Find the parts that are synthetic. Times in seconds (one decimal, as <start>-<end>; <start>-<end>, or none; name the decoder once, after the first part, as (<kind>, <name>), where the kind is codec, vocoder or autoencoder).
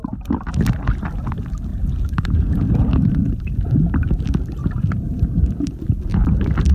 1.7-3.1 (vocoder, BigVGAN v2); 4.6-5.4